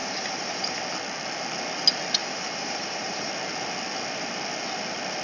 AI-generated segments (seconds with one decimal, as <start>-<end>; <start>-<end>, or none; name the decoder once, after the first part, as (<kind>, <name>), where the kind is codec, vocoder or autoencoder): 0.0-0.8 (vocoder, BigVGAN v2); 2.2-3.3